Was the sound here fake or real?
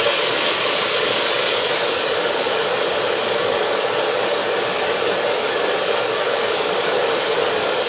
fake